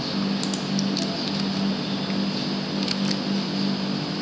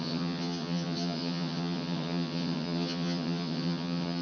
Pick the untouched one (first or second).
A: first